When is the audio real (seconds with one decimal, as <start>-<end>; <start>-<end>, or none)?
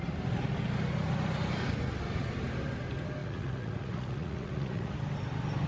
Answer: 0.0-3.2; 4.9-5.7